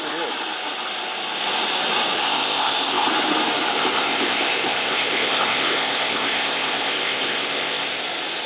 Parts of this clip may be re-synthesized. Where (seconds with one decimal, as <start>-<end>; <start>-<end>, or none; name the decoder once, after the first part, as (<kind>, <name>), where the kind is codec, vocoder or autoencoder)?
2.2-3.1 (codec, ZipCodec); 3.7-8.0